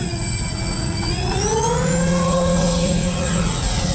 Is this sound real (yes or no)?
no